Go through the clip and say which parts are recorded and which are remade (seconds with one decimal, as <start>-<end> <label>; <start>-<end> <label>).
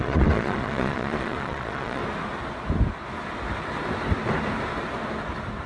0.0-2.0 remade; 2.0-5.7 recorded